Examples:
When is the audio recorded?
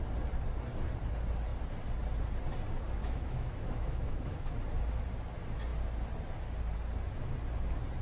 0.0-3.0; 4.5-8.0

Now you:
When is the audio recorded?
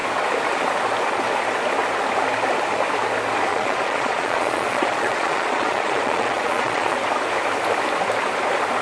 0.0-3.5; 7.0-8.8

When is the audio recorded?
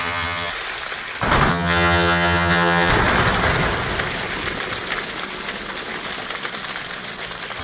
0.5-1.5; 2.9-7.6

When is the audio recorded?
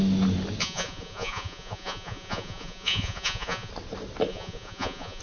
0.0-0.6; 3.7-4.3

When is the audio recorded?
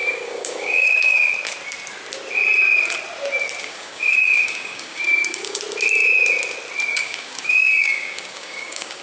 1.3-3.6; 5.6-6.9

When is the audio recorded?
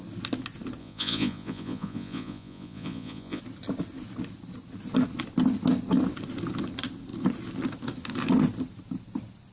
0.0-0.8; 3.4-9.5